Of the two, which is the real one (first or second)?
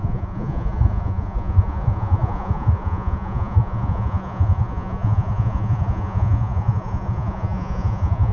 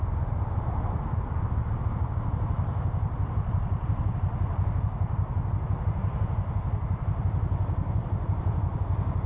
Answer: second